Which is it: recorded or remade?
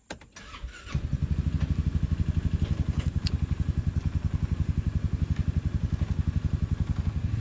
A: recorded